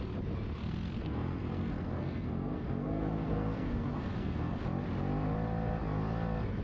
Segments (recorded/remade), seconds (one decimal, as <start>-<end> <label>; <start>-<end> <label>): 0.0-0.6 recorded; 0.6-4.6 remade; 4.6-6.6 recorded